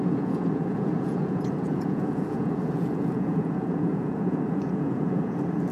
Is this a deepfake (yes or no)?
yes